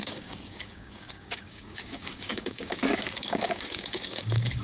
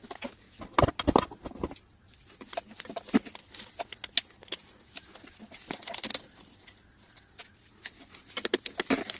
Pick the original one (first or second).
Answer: second